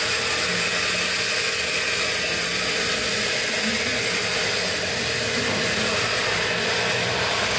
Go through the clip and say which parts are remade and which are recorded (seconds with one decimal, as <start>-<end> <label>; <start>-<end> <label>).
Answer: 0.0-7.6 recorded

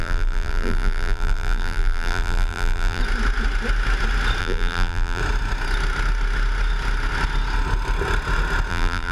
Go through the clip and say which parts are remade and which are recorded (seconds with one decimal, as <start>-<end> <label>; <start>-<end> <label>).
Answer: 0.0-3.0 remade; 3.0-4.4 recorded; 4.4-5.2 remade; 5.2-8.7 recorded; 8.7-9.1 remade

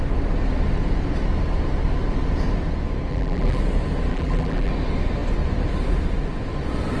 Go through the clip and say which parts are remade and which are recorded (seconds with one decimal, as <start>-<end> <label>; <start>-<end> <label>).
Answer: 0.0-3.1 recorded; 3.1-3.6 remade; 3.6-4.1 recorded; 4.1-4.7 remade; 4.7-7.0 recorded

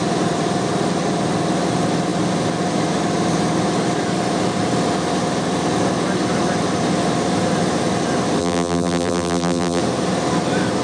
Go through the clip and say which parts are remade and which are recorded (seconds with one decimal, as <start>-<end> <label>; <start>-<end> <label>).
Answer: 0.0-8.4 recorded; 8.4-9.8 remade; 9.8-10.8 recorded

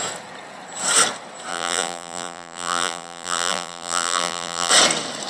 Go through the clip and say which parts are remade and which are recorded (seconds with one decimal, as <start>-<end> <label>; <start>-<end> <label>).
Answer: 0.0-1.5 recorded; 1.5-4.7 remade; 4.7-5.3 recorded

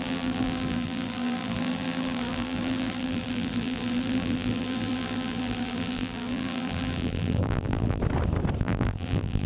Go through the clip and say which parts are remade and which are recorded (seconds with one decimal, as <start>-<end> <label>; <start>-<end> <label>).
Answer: 0.0-8.0 remade; 8.0-8.6 recorded; 8.6-9.5 remade